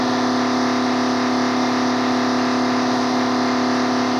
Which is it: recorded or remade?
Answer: recorded